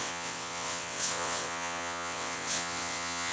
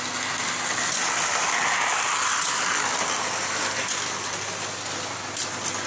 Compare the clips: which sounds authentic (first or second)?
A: second